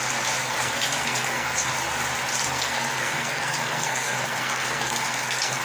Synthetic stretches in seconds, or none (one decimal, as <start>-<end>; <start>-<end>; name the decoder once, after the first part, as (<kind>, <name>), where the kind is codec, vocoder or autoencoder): 0.4-1.7 (codec, SNAC); 2.3-5.6